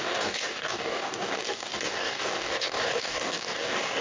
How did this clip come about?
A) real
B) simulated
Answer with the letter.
B